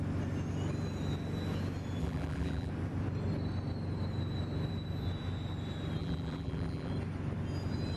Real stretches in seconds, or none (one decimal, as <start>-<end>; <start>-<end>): 0.0-2.0; 2.7-6.0; 6.9-8.0